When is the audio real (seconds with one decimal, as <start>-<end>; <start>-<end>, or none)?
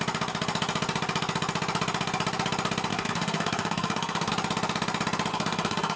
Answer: 0.0-2.9; 4.3-5.3